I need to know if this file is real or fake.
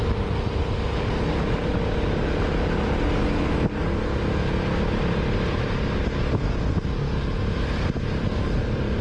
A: real